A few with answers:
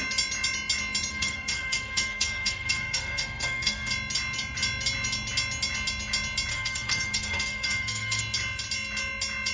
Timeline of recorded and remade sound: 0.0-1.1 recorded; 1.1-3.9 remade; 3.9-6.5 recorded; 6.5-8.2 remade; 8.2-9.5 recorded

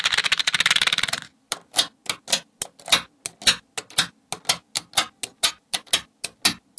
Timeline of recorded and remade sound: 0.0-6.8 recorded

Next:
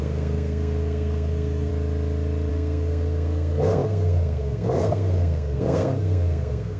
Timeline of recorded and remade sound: 0.0-1.7 remade; 1.7-2.5 recorded; 2.5-6.8 remade

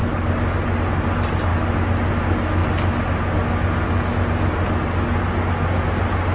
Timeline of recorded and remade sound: 0.0-6.3 recorded

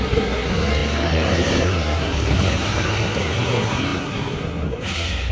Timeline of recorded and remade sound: 0.0-5.3 remade

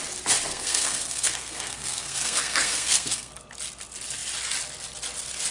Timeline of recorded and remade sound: 0.0-0.5 recorded; 0.5-3.3 remade; 3.3-5.5 recorded

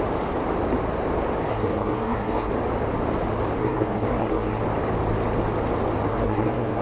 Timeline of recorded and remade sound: 0.0-1.5 recorded; 1.5-2.5 remade; 2.5-3.6 recorded; 3.6-4.6 remade; 4.6-6.1 recorded; 6.1-6.8 remade

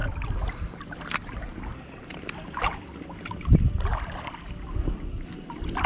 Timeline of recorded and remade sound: 0.0-5.9 recorded